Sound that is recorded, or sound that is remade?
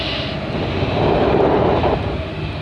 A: recorded